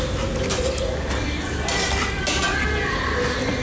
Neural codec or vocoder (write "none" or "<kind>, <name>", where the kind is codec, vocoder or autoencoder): none